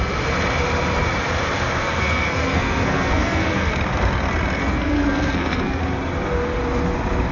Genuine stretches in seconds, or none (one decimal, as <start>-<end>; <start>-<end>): 0.0-1.8; 3.7-4.6; 5.8-7.3